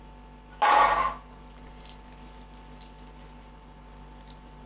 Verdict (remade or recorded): recorded